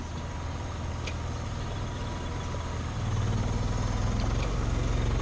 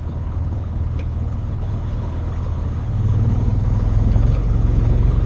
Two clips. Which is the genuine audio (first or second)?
first